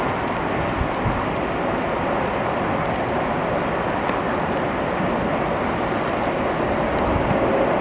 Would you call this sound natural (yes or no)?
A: yes